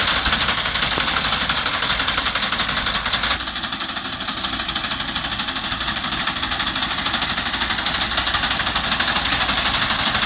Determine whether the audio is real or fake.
real